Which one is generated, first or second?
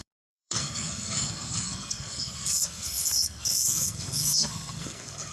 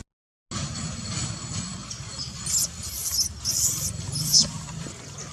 first